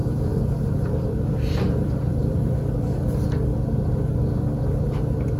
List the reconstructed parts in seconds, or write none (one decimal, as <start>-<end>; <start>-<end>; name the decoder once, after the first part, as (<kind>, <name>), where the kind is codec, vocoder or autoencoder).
0.0-1.3 (vocoder, BigVGAN v2); 2.2-2.9